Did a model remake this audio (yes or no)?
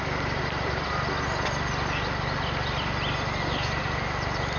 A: no